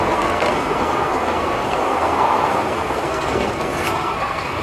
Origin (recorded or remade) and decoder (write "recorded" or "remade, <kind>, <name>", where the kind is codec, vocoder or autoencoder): remade, codec, SNAC